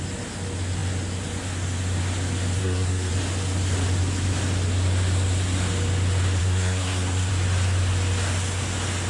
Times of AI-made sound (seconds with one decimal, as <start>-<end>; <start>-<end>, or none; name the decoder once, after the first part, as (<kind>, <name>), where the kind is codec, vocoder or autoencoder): 2.6-3.1 (codec, SNAC); 6.4-7.3